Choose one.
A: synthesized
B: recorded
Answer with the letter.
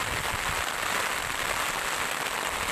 B